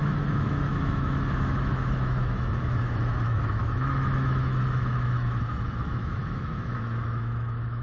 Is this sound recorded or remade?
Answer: remade